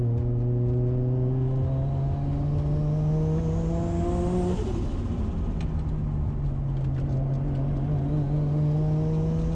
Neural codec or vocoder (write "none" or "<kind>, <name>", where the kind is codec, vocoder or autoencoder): none